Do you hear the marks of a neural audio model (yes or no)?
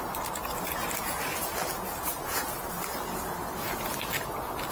no